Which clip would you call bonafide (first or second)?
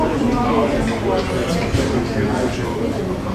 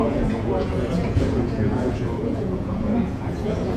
first